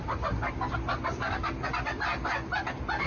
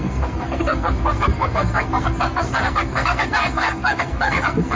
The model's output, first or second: second